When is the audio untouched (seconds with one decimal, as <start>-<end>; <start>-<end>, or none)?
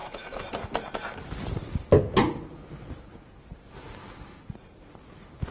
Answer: 0.5-5.5